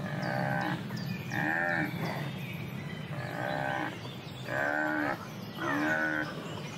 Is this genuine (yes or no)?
yes